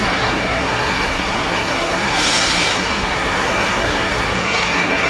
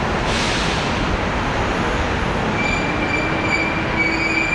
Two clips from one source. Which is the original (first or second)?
second